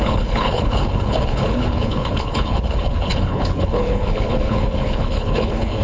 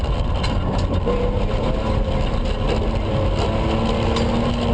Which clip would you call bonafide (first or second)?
second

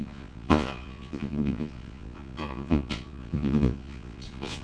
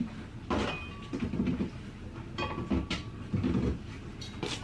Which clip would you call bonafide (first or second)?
second